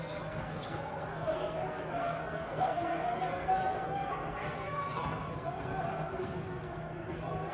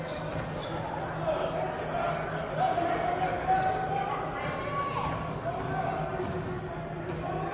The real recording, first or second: second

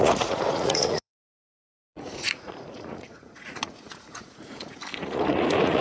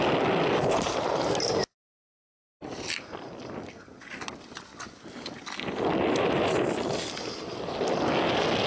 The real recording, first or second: second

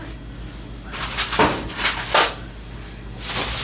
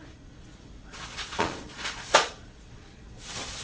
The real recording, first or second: first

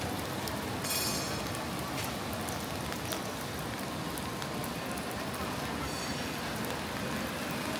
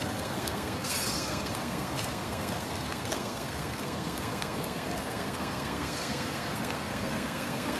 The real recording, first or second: first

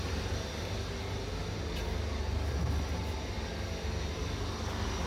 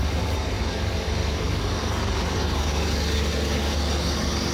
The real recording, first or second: first